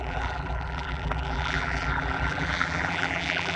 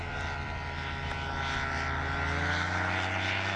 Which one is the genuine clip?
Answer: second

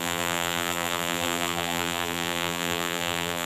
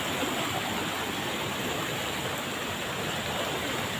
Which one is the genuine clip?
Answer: second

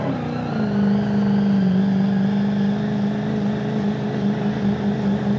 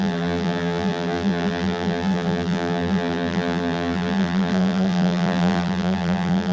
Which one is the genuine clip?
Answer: first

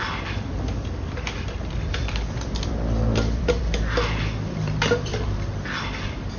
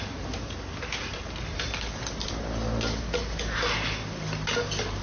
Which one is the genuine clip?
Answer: second